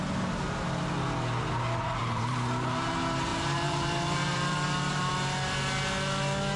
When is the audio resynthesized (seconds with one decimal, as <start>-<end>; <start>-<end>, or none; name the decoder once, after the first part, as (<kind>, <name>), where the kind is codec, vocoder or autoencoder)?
2.0-2.9 (vocoder, BigVGAN v2); 3.3-5.1